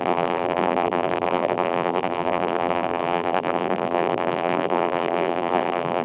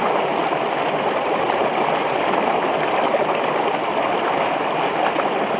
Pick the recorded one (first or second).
second